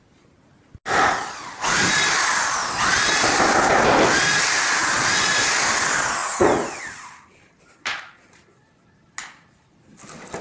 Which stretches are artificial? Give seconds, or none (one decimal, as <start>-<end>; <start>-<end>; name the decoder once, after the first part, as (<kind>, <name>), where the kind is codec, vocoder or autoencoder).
6.2-6.8 (vocoder, Vocos)